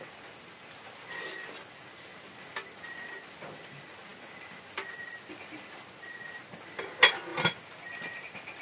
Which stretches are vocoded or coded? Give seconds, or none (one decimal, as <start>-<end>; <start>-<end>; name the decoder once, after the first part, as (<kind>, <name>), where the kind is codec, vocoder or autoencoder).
none